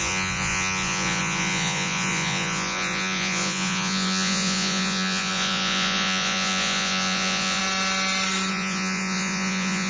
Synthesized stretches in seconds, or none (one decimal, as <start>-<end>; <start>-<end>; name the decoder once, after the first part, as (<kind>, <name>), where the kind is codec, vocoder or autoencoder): 0.0-7.6 (vocoder, Vocos); 8.5-9.9

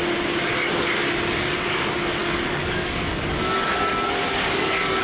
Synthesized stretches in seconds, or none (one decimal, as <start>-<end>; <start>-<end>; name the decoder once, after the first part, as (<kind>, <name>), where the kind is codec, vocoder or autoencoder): 1.3-5.0 (codec, DAC)